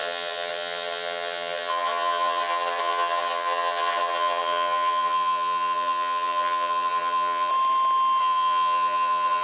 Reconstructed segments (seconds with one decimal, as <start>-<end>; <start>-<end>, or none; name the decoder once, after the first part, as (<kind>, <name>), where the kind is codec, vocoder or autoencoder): 0.0-7.5 (vocoder, HiFi-GAN); 8.2-9.4